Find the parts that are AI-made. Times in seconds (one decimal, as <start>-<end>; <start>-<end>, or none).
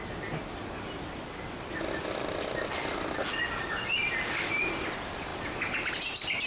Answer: none